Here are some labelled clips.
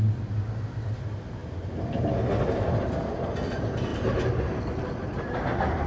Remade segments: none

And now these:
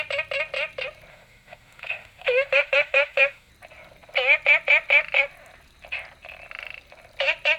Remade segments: 1.1-3.5 (autoencoder, DAC-VAE)